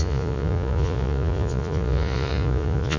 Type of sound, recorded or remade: remade